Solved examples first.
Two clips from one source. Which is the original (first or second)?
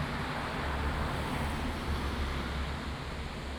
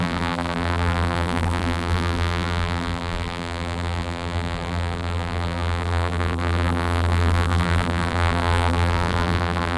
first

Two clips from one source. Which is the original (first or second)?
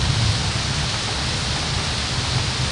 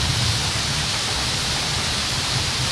first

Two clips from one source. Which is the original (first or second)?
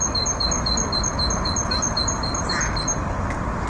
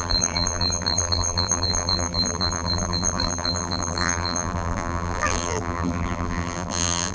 first